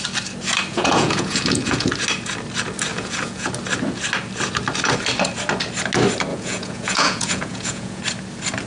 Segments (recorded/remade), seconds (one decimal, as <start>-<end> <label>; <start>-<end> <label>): 0.0-0.7 recorded; 0.7-1.9 remade; 1.9-2.9 recorded; 2.9-3.5 remade; 3.5-6.3 recorded; 6.3-8.0 remade; 8.0-8.7 recorded